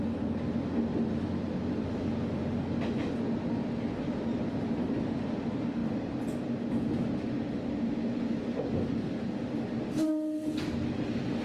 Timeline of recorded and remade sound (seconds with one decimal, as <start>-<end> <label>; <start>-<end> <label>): 0.0-11.4 recorded